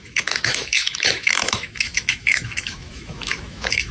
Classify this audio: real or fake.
fake